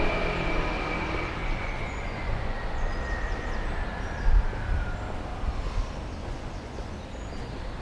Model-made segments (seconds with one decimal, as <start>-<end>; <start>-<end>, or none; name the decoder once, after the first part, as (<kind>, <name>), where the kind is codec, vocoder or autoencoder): 1.4-3.0 (vocoder, Vocos); 6.2-6.9